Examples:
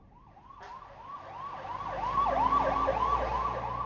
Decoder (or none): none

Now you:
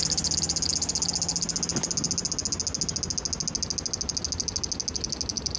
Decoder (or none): none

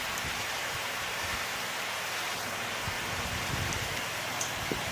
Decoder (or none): vocoder, BigVGAN v2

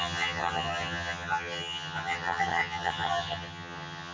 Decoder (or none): vocoder, HiFi-GAN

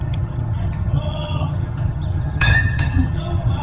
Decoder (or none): vocoder, HiFi-GAN